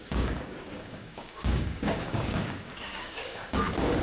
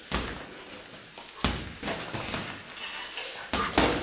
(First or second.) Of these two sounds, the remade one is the first